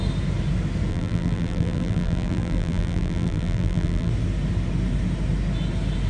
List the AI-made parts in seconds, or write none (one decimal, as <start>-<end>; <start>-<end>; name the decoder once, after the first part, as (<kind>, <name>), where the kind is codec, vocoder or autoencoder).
0.9-4.1 (vocoder, BigVGAN v2)